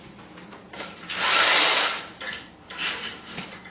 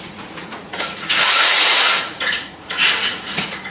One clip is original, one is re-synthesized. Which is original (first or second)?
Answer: first